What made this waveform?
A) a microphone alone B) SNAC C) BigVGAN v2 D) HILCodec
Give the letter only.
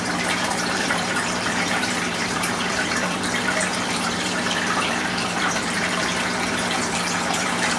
C